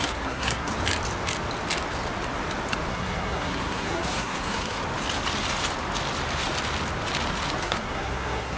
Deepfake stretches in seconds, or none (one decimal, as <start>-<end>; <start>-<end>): 0.0-0.7; 2.9-4.8; 7.6-8.6